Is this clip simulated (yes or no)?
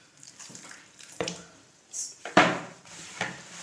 yes